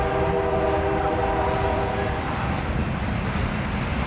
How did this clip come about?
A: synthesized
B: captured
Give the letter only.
B